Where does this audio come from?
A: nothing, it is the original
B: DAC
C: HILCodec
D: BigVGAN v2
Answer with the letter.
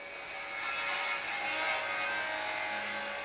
A